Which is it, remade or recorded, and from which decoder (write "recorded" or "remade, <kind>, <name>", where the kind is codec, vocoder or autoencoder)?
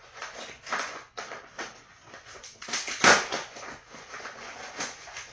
remade, vocoder, Vocos